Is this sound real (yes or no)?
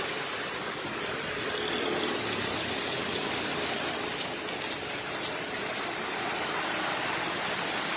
yes